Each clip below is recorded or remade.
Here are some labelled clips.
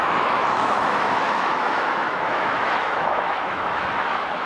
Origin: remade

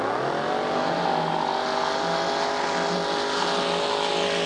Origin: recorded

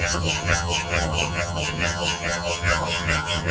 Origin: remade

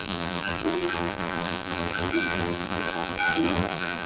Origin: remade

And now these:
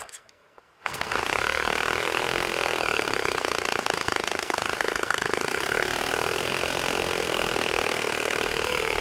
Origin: remade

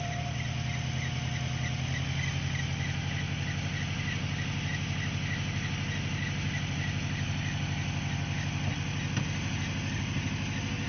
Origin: recorded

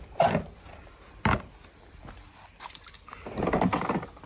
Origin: recorded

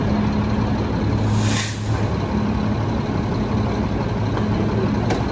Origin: recorded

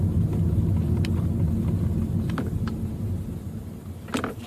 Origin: recorded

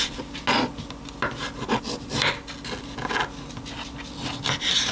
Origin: recorded